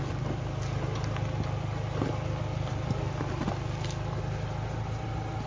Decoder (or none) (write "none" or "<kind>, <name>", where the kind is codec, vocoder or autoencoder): none